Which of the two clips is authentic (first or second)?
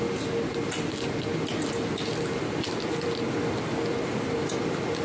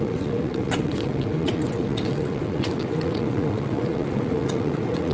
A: first